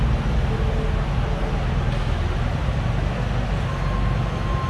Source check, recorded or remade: recorded